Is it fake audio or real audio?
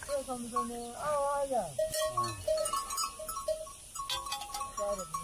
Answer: real